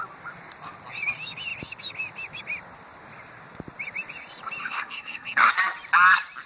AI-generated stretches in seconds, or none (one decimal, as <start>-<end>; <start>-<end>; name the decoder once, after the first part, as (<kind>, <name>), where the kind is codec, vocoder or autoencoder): 4.6-5.5 (codec, SNAC)